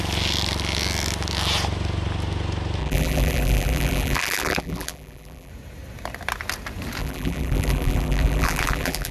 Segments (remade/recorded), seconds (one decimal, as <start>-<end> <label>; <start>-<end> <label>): 0.0-2.8 recorded; 2.8-5.5 remade; 5.5-7.0 recorded; 7.0-9.1 remade